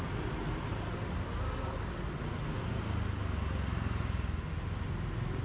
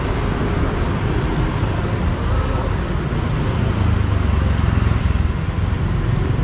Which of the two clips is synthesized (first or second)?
second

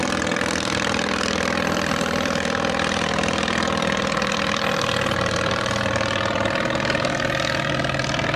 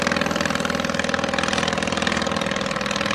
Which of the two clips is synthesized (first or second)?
first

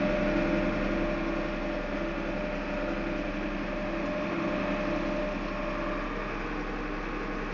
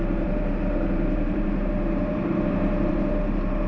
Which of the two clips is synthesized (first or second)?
second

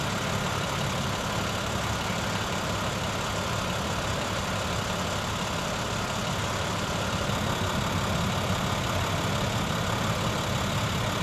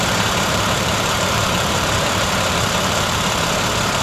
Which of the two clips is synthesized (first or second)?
second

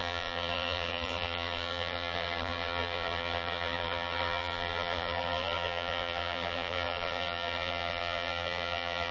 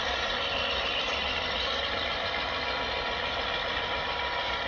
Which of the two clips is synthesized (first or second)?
first